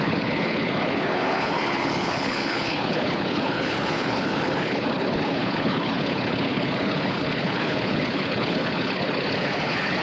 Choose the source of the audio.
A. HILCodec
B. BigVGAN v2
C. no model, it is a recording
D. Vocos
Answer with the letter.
A